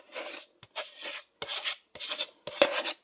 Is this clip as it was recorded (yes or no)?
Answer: yes